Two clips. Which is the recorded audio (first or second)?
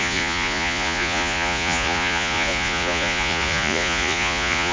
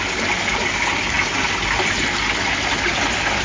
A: second